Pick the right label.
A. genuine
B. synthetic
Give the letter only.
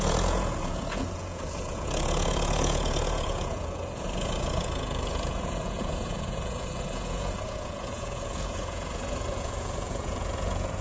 B